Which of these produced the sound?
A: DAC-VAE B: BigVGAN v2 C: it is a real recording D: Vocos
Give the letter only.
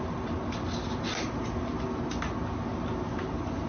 C